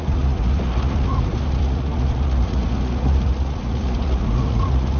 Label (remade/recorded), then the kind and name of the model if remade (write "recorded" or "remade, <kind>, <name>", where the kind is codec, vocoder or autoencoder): remade, vocoder, Vocos